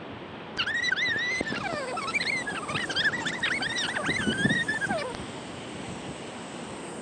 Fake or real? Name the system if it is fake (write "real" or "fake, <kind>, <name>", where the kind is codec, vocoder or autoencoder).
real